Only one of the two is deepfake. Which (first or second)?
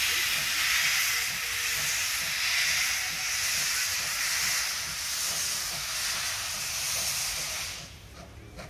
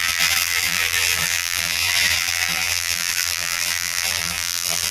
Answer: second